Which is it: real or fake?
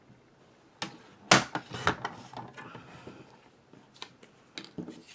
real